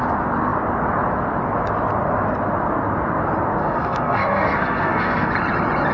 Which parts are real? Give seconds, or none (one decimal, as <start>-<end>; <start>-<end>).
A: 0.0-3.6; 5.3-5.9